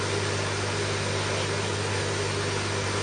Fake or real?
real